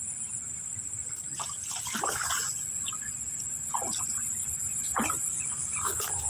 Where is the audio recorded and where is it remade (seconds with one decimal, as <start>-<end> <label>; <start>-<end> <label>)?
0.0-6.3 recorded